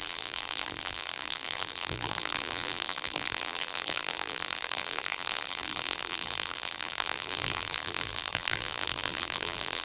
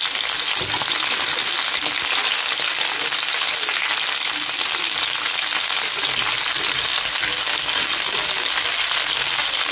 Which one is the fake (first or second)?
first